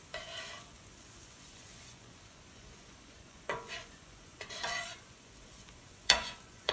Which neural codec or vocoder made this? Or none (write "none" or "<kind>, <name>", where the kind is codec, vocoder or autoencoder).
vocoder, Vocos